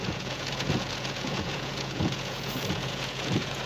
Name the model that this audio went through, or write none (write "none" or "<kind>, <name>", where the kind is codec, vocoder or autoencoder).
vocoder, Vocos